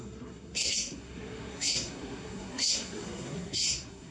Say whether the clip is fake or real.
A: fake